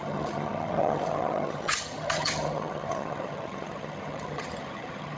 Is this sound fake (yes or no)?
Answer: yes